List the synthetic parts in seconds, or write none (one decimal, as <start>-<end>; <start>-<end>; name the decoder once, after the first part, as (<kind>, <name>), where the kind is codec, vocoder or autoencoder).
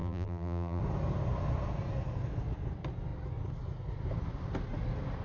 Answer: 0.0-0.8 (vocoder, BigVGAN v2)